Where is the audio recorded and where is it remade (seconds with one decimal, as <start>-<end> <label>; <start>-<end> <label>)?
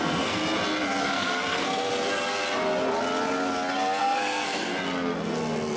0.0-0.4 remade; 0.4-1.0 recorded; 1.0-1.9 remade; 1.9-4.0 recorded; 4.0-4.7 remade; 4.7-5.8 recorded